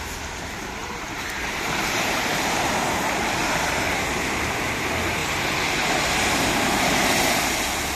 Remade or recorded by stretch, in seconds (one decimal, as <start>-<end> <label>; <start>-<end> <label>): 0.0-3.4 remade; 3.4-4.1 recorded; 4.1-5.2 remade; 5.2-6.8 recorded; 6.8-8.0 remade